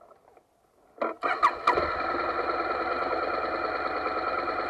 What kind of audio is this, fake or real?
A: real